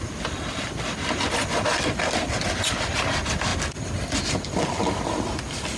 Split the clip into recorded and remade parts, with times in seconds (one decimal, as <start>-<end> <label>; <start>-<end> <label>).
0.0-5.8 recorded